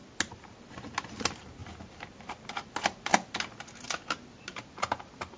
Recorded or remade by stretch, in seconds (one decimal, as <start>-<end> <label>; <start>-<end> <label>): 0.0-5.4 recorded